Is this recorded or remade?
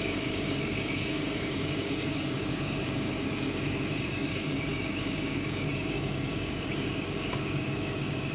remade